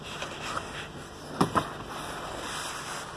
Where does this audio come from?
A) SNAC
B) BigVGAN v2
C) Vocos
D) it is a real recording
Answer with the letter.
D